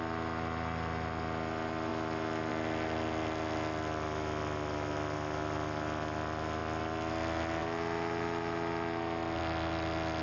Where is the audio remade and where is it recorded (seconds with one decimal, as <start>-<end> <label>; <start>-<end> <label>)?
0.0-10.2 recorded